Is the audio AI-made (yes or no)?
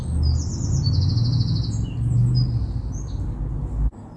no